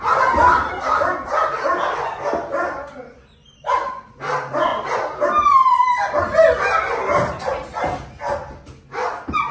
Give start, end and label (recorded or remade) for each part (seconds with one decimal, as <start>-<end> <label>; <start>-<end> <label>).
0.0-9.5 recorded